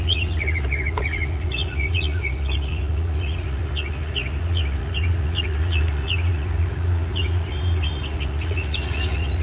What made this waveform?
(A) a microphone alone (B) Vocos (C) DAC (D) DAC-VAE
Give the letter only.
B